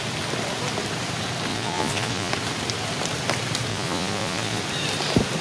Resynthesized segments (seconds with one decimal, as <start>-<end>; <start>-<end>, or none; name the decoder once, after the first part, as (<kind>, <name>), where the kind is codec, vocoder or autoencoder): 1.5-2.3 (vocoder, Vocos); 3.7-4.6